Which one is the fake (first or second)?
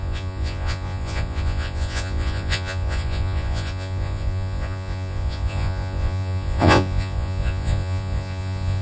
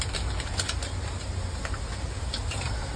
first